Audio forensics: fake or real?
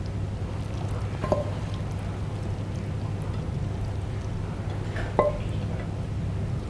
real